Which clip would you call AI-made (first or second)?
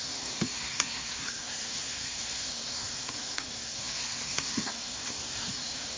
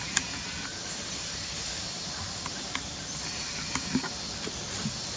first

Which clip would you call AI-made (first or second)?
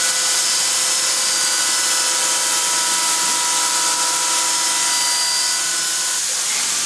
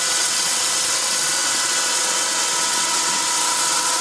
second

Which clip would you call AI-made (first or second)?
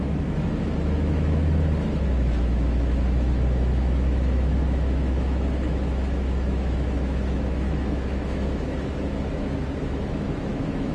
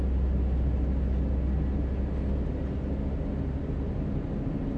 first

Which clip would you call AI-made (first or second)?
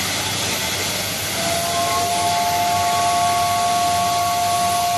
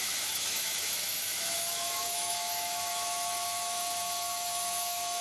second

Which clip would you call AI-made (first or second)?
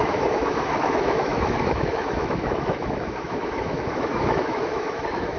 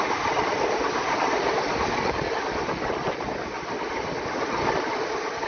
first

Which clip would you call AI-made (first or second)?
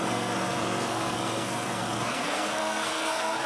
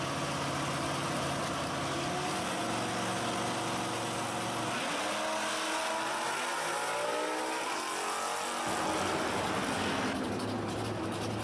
first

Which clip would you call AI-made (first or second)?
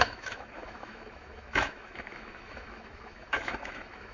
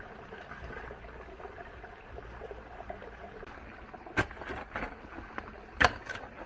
first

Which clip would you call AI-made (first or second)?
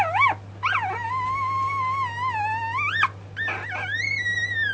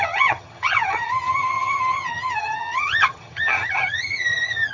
second